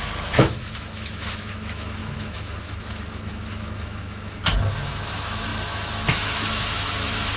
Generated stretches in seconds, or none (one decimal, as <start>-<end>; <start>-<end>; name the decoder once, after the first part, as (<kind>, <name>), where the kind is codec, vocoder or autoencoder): 0.0-4.4 (autoencoder, DAC-VAE); 4.9-7.4